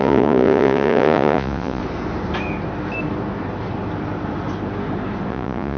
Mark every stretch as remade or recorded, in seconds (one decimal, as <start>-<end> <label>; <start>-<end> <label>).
0.0-1.8 remade; 1.8-5.3 recorded; 5.3-5.8 remade